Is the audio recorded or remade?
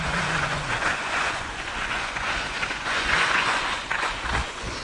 remade